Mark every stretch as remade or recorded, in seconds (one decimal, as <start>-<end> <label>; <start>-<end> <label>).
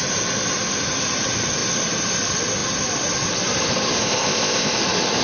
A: 0.0-4.0 recorded; 4.0-4.8 remade; 4.8-5.2 recorded